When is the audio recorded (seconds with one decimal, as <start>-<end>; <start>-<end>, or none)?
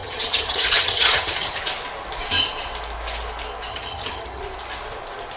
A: 1.6-3.7; 4.4-5.4